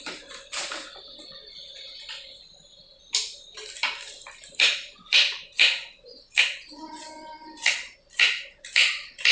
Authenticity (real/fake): fake